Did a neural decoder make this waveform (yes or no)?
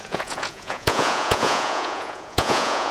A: yes